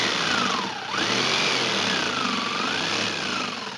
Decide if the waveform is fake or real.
real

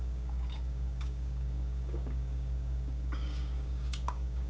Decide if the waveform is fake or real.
fake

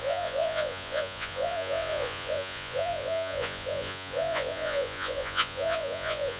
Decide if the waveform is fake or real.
fake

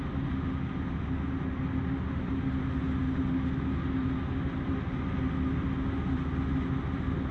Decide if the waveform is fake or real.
real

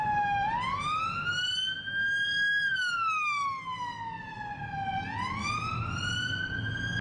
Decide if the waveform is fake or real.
real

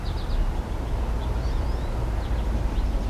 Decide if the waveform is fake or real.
real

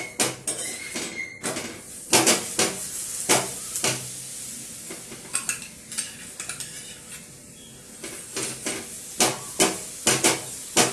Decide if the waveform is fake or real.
real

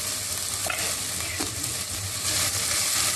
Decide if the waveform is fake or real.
real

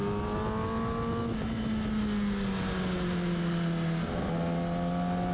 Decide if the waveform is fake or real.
real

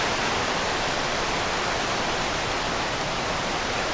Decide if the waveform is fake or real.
real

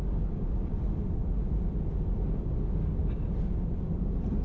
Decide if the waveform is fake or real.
real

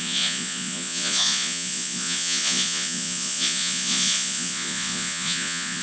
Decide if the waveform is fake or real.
fake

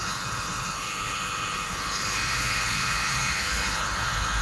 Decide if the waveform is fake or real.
fake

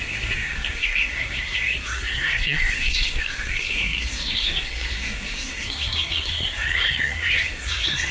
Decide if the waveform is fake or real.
fake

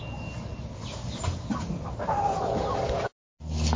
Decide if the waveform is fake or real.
real